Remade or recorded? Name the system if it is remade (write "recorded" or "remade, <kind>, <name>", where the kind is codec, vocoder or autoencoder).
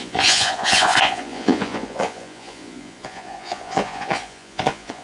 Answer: remade, vocoder, Vocos